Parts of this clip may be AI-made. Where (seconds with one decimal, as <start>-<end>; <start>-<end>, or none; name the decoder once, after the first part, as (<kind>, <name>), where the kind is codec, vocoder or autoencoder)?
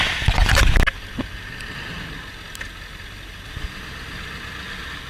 none